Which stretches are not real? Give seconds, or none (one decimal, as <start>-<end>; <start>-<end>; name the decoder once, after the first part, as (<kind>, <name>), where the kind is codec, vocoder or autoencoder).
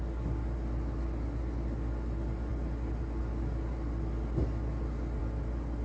none